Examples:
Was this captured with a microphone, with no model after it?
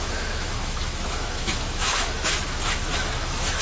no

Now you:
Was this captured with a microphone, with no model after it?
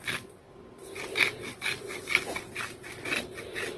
yes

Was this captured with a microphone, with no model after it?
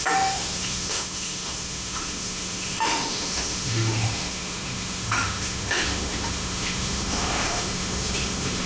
no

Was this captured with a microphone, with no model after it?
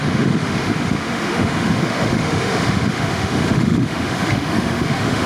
no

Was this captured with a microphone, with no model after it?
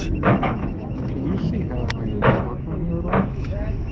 no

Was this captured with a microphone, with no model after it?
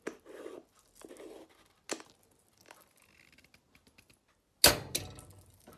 yes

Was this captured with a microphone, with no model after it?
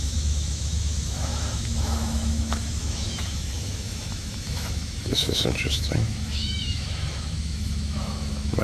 no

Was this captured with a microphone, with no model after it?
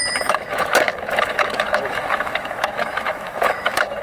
no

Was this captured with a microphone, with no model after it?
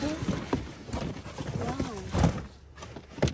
yes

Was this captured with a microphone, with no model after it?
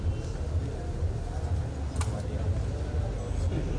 yes